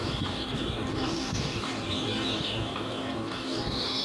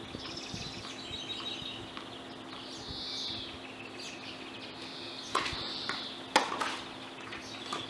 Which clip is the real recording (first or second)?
second